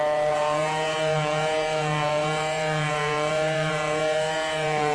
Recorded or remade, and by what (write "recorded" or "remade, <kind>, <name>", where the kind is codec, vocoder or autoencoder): remade, vocoder, Vocos